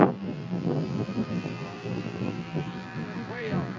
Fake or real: fake